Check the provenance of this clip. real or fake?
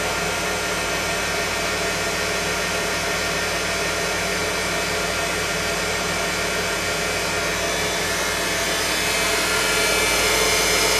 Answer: real